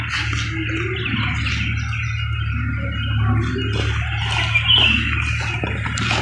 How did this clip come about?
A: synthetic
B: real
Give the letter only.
B